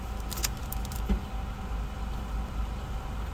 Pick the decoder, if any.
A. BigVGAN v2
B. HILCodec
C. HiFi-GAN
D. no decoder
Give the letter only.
D